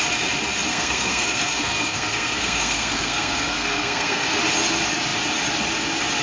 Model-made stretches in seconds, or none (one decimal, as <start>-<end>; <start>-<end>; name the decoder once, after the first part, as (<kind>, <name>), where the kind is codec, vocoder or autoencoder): 0.7-4.4 (codec, SNAC)